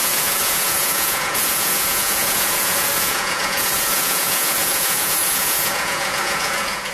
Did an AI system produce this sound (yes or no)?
yes